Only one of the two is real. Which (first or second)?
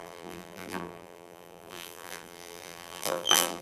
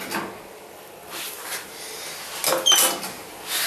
second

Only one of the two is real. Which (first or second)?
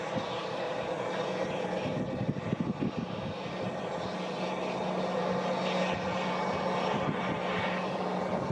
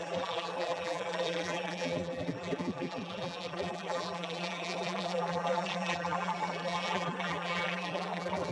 first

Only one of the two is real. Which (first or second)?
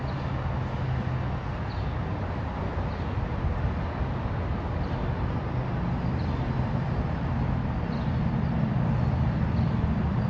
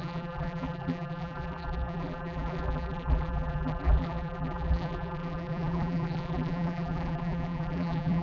first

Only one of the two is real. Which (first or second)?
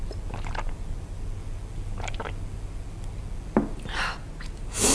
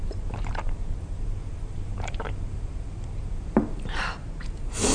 first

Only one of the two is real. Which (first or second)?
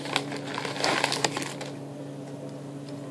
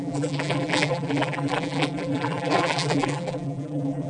first